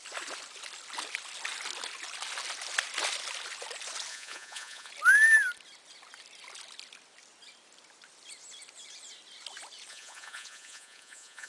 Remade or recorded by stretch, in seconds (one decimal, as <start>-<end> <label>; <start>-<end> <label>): 0.0-4.1 recorded; 4.1-4.9 remade; 4.9-9.9 recorded; 9.9-11.5 remade